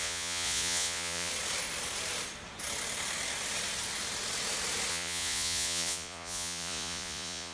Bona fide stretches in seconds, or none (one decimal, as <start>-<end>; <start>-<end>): 1.3-4.9